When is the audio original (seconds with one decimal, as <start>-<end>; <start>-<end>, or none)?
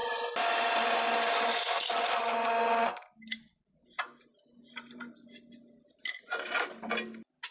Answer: 0.0-7.5